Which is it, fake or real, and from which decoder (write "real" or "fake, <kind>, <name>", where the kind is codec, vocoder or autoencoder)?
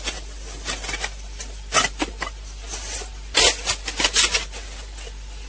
real